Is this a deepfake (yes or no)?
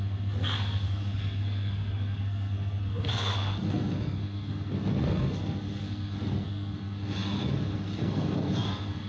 yes